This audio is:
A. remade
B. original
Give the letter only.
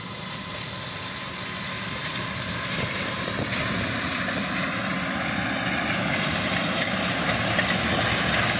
B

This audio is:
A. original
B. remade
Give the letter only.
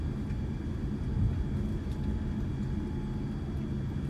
A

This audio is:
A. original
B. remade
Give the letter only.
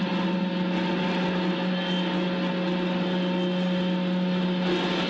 A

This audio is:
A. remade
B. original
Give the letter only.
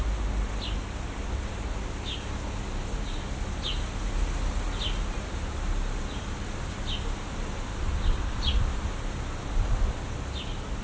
B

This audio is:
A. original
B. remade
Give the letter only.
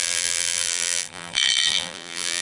B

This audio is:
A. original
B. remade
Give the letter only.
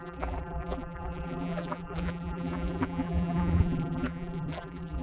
B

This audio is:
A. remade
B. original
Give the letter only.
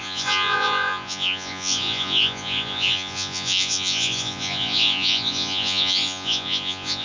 A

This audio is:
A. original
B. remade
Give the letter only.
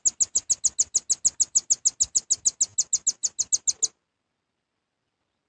A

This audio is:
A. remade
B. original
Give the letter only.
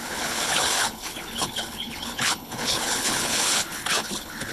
A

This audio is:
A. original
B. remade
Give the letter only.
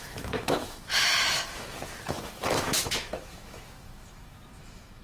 B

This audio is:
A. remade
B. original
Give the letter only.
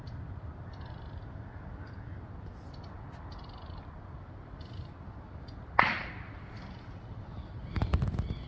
B